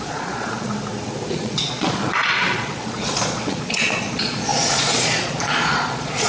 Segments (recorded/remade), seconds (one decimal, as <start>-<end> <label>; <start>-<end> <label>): 0.0-0.7 remade; 0.7-1.3 recorded; 1.3-6.3 remade